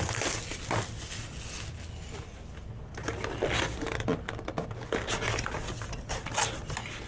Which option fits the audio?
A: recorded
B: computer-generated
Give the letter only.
A